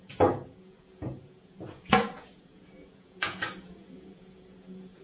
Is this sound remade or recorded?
remade